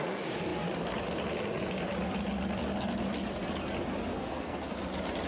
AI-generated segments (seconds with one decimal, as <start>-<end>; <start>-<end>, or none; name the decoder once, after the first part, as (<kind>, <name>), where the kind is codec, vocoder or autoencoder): 4.1-4.8 (codec, SNAC)